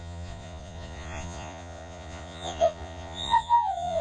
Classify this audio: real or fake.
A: fake